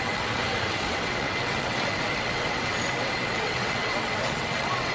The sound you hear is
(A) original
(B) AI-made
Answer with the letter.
B